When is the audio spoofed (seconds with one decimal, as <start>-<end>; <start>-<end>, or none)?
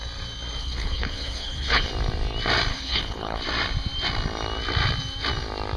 0.6-1.9; 2.7-3.4